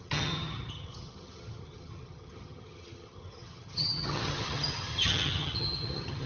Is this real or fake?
fake